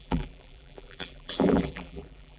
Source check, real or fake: fake